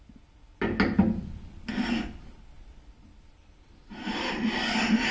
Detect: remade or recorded recorded